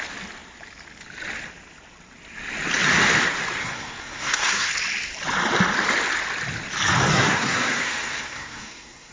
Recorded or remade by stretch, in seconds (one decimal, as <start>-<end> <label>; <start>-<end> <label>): 0.0-3.6 recorded; 3.6-4.7 remade; 4.7-7.1 recorded; 7.1-9.1 remade